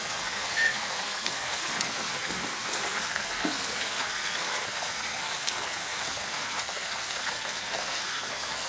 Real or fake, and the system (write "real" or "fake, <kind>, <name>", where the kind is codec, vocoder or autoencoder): fake, codec, SNAC